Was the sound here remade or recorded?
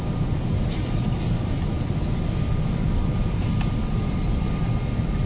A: recorded